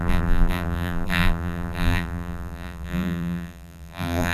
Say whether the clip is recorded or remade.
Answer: remade